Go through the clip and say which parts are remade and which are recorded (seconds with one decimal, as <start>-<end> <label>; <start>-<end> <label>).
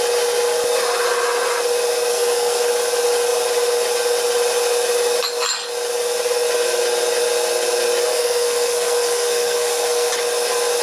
0.0-2.1 recorded; 2.1-2.7 remade; 2.7-8.1 recorded; 8.1-10.1 remade; 10.1-10.8 recorded